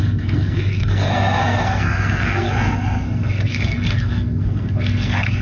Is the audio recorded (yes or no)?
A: no